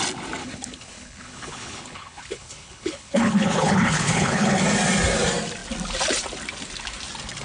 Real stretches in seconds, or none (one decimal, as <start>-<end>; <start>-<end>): 0.0-0.4; 4.6-7.4